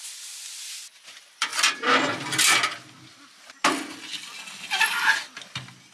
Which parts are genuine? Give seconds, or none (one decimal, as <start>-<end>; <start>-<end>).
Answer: 0.0-5.9